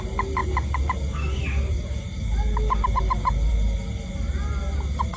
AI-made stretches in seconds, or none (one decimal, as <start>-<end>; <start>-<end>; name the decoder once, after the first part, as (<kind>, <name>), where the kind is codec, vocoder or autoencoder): none